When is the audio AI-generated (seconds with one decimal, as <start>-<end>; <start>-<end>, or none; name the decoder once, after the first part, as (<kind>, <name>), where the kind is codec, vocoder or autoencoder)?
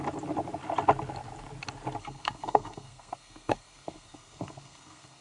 2.0-5.2 (codec, SNAC)